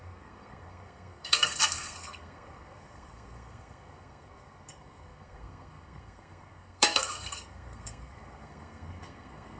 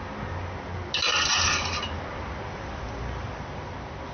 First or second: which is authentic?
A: second